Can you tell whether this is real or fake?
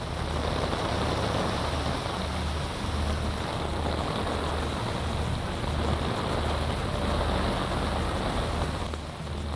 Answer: real